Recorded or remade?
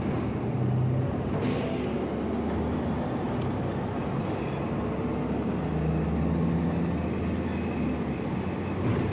recorded